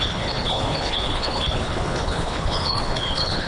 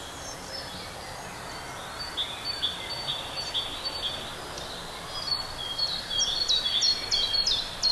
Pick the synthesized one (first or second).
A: first